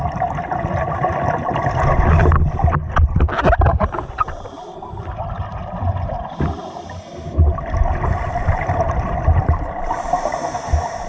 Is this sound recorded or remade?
remade